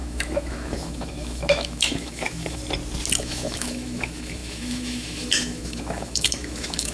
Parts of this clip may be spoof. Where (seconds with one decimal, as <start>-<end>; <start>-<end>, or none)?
0.0-2.6; 3.2-6.9